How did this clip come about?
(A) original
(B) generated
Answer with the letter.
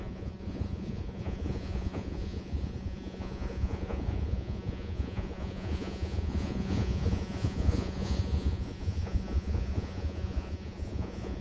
B